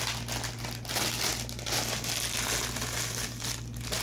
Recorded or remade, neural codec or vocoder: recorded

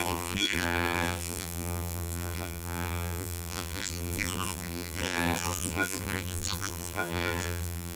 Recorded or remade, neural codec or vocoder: remade, vocoder, BigVGAN v2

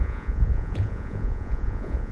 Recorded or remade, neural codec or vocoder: remade, vocoder, Vocos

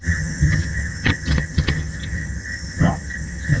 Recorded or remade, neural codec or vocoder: remade, vocoder, HiFi-GAN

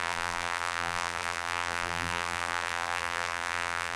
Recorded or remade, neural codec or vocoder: remade, vocoder, BigVGAN v2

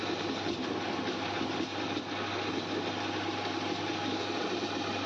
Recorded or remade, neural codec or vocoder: recorded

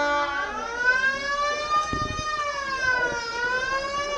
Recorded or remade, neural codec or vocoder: recorded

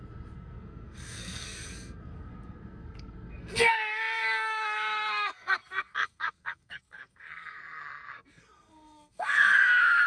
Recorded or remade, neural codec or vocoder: remade, codec, SNAC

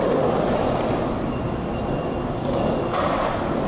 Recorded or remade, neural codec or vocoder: recorded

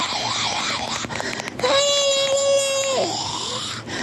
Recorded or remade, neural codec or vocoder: recorded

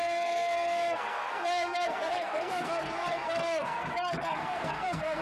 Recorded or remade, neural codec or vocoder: remade, codec, SNAC